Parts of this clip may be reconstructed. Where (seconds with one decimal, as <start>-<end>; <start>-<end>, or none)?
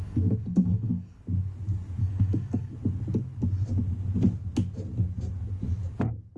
0.0-1.2; 2.0-2.7